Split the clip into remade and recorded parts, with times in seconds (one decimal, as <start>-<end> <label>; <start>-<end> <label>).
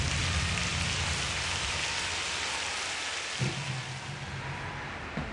0.0-5.3 recorded